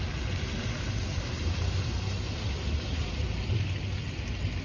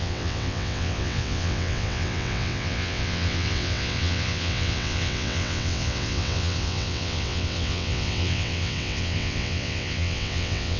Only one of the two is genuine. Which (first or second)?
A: first